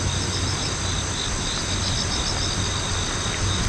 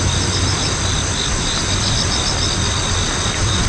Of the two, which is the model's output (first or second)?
second